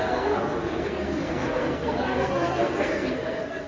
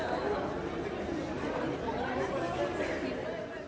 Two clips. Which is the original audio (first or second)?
second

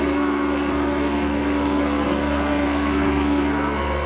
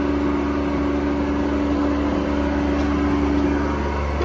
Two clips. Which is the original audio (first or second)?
second